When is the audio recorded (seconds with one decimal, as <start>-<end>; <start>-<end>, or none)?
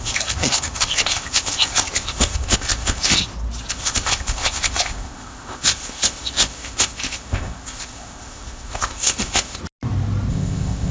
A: 3.2-3.7; 9.6-10.3